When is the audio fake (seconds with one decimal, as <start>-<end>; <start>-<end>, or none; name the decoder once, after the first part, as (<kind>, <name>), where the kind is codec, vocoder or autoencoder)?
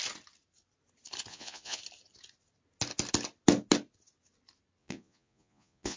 1.3-1.8 (vocoder, Vocos); 4.8-6.0